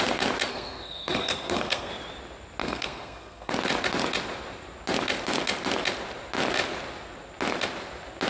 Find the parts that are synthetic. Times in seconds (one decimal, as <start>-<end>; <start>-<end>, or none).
0.5-1.9; 2.6-3.5